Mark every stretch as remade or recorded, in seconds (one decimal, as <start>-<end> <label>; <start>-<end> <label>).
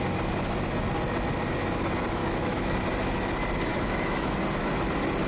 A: 0.0-2.2 recorded; 2.2-2.8 remade; 2.8-3.7 recorded; 3.7-4.4 remade; 4.4-5.3 recorded